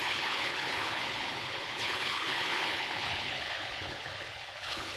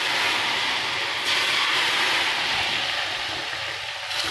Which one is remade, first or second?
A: first